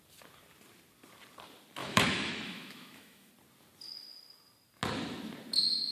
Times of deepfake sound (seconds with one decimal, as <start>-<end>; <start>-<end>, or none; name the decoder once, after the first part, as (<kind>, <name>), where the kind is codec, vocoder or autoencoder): 1.8-3.3 (autoencoder, DAC-VAE)